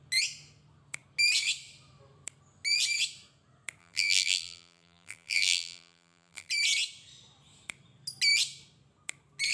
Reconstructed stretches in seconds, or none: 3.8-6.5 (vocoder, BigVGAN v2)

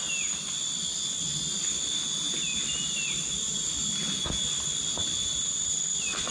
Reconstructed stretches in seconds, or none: none

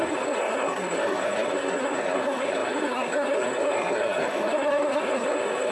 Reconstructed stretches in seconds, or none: 0.0-5.7 (codec, SNAC)

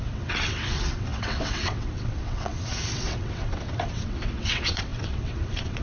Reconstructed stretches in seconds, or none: 0.0-5.8 (vocoder, WaveNeXt)

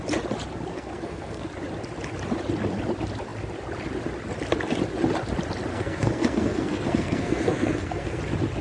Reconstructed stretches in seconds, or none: 0.7-1.5 (codec, SNAC); 5.7-8.2

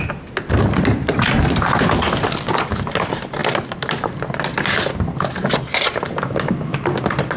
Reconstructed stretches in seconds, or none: none

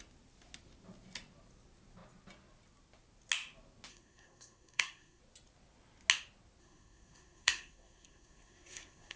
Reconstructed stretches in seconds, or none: 3.9-5.2 (codec, SNAC); 6.6-9.2

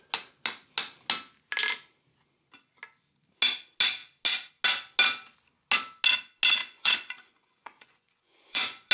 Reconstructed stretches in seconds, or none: 6.6-8.9 (vocoder, Vocos)